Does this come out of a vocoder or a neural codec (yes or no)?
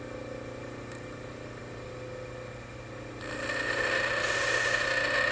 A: no